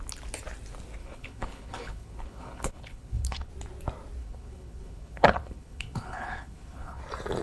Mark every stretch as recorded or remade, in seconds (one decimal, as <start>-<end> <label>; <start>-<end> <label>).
0.0-1.0 recorded; 1.0-3.5 remade; 3.5-4.2 recorded; 4.2-7.0 remade; 7.0-7.4 recorded